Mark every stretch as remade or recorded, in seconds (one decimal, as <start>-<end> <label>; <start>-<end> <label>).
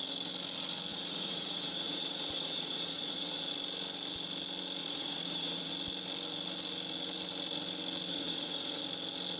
0.0-0.9 recorded; 0.9-3.5 remade; 3.5-4.8 recorded; 4.8-5.7 remade; 5.7-8.1 recorded; 8.1-8.8 remade; 8.8-9.4 recorded